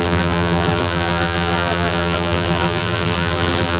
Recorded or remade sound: remade